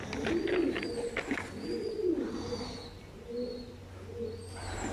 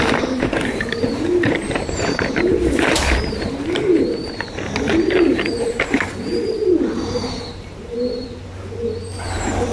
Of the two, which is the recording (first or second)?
first